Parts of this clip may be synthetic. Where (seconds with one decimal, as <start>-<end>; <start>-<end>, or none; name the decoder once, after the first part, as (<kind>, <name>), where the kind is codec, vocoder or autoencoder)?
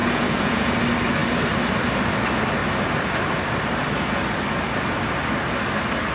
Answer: 0.0-0.7 (vocoder, Vocos)